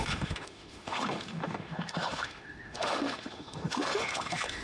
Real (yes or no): no